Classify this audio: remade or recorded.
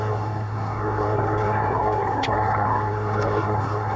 remade